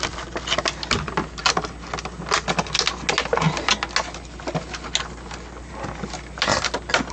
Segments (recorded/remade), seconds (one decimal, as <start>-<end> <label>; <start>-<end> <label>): 0.0-7.1 recorded